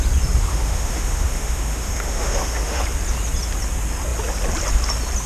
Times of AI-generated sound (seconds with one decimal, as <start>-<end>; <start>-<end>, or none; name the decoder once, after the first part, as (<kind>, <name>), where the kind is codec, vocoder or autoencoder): 0.5-2.8 (autoencoder, DAC-VAE)